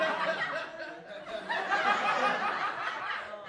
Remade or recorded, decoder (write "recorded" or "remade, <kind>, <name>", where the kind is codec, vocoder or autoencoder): recorded